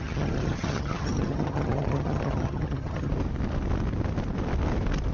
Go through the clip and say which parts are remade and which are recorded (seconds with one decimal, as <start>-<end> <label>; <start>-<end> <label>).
0.0-3.1 remade; 3.1-5.1 recorded